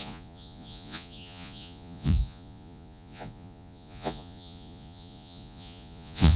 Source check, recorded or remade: remade